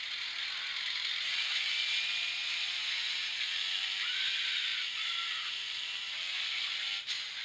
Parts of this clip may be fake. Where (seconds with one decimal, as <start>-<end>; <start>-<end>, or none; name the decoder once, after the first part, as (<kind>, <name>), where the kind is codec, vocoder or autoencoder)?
none